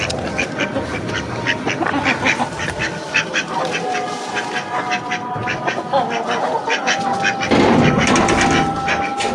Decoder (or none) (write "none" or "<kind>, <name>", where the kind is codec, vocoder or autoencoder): none